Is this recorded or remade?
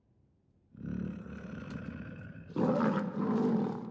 recorded